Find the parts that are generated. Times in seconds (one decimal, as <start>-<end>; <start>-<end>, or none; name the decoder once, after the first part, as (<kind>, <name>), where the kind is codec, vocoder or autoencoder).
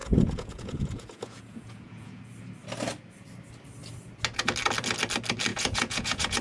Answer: 0.0-2.2 (vocoder, Vocos); 5.5-6.4